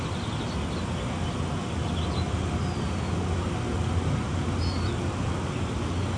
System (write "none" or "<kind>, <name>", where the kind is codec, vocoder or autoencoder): none